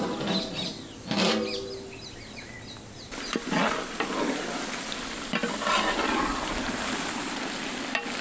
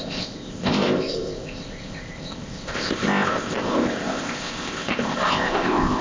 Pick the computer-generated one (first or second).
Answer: second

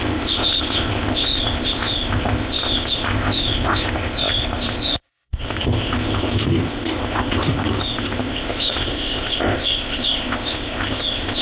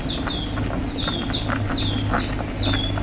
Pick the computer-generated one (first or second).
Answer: first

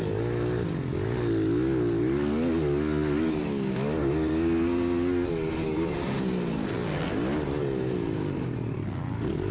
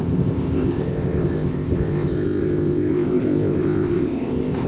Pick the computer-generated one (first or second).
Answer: second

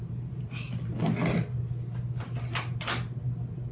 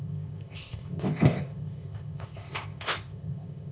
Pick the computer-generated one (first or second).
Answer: second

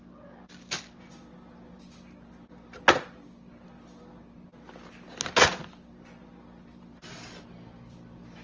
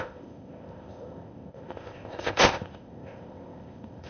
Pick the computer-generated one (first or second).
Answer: second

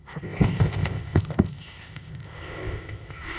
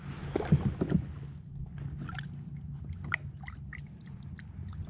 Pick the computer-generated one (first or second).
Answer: first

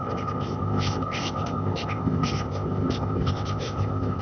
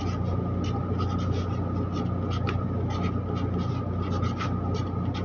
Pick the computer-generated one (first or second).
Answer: first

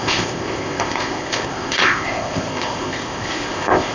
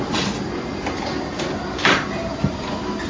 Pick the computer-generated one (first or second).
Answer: first